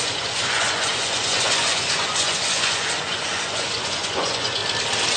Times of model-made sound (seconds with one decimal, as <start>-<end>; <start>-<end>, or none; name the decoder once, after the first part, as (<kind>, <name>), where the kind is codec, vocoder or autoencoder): 0.0-4.6 (vocoder, Vocos)